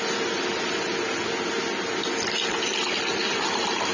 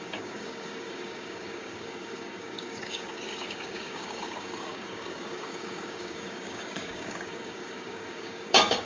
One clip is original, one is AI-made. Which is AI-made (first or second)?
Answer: second